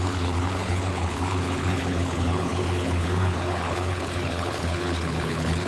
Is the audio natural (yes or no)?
no